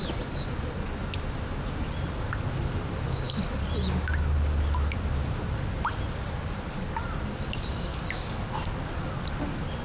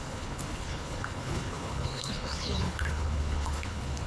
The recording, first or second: first